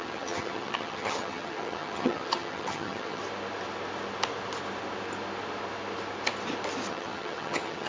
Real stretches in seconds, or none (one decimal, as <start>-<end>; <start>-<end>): 3.2-6.9